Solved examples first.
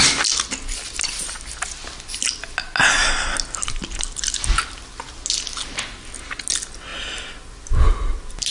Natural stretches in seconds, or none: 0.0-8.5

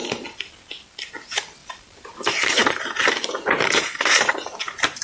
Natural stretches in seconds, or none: 0.0-1.6; 4.6-5.0

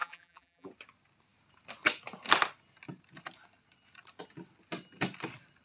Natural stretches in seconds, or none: 0.7-5.6

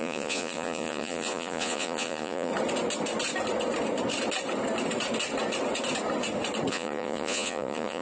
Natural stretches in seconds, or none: 2.5-6.7

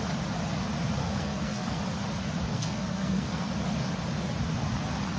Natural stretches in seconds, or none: 0.0-1.0; 1.8-2.5; 3.5-5.2